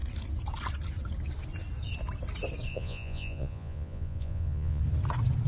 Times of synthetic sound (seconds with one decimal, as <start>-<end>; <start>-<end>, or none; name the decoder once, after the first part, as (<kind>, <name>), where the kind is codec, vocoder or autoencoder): 2.7-4.8 (vocoder, Vocos)